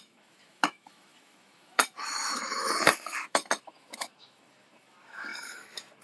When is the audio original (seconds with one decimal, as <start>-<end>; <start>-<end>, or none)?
none